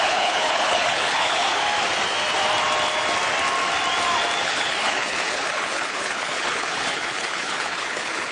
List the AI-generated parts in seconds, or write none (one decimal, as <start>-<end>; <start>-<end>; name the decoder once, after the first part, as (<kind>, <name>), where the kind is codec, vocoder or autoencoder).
0.0-1.6 (codec, HILCodec); 4.4-8.3